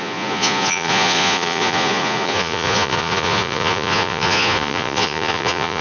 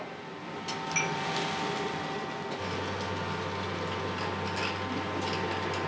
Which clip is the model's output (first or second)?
first